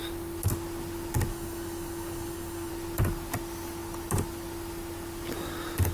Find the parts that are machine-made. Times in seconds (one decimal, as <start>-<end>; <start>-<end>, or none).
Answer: 1.3-2.7